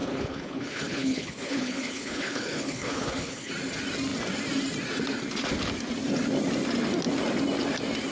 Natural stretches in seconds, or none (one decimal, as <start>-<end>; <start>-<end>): 3.5-8.1